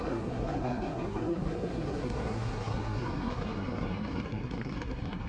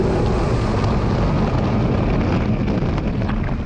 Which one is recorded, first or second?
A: second